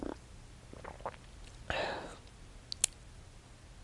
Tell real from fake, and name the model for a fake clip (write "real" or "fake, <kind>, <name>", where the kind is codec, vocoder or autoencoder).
real